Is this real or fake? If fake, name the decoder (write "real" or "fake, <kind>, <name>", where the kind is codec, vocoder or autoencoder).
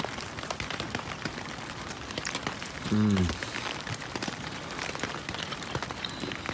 fake, vocoder, BigVGAN v2